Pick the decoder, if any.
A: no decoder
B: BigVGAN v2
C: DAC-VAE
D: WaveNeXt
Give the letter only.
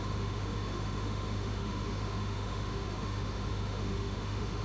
C